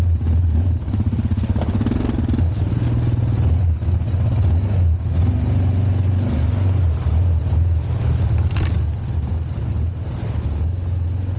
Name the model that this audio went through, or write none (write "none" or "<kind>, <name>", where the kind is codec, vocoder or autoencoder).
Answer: none